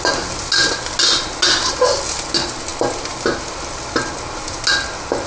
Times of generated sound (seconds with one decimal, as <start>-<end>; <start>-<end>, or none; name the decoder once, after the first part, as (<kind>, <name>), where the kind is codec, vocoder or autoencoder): none